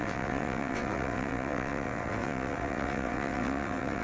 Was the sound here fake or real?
fake